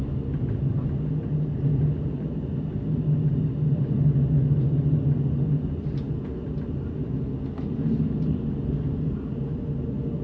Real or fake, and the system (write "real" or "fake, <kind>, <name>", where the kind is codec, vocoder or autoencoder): real